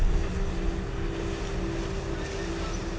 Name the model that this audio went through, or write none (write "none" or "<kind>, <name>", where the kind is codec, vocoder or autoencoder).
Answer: none